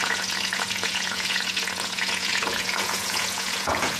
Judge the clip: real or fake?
fake